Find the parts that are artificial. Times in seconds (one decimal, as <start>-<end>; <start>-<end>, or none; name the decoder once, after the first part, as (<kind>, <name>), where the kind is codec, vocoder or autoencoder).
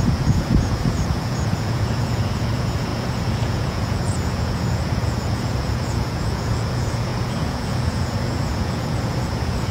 0.0-9.7 (vocoder, Vocos)